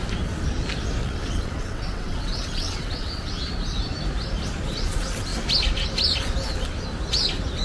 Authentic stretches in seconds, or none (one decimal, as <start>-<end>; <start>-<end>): 0.0-1.0; 3.3-7.6